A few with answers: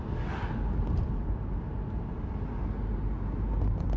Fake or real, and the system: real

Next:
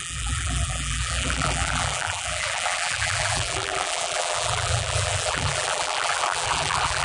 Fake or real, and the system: fake, vocoder, BigVGAN v2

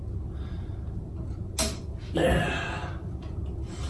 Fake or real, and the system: real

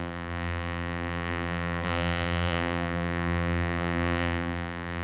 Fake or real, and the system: fake, vocoder, BigVGAN v2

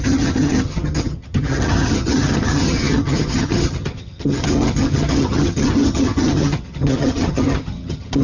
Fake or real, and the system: fake, vocoder, HiFi-GAN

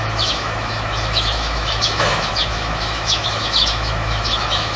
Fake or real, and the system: fake, autoencoder, DAC-VAE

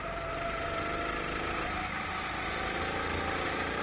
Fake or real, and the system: real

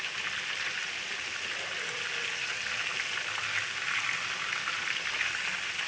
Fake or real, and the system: real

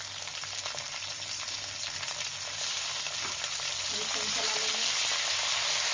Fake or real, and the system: real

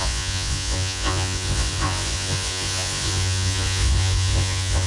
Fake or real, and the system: fake, vocoder, Vocos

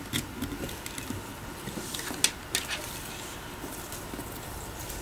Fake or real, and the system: real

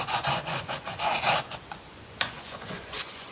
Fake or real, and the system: fake, vocoder, Vocos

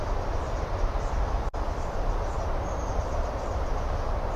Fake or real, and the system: real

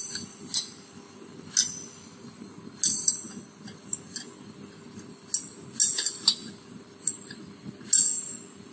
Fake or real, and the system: real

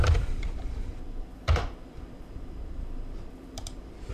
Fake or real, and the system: fake, vocoder, BigVGAN v2